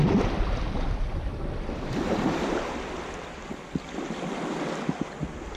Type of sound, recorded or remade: recorded